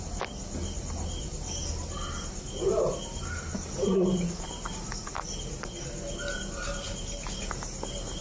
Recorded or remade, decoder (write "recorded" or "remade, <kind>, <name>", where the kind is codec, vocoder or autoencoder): recorded